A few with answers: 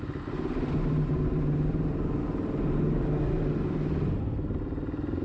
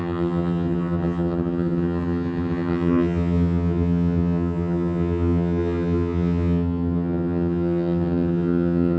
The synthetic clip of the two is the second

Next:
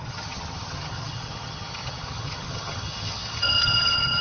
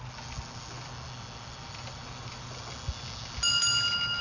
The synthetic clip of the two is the first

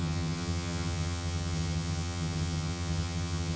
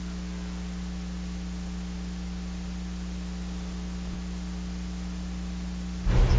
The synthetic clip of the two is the first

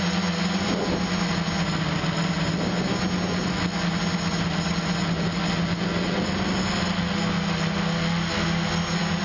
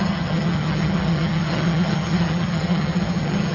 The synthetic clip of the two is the second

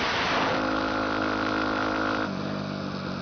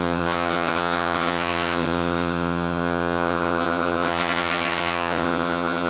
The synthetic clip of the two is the second